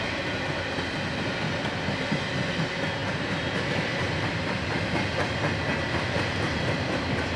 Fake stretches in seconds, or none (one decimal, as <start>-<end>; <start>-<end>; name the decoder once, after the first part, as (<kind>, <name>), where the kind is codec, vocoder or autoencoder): none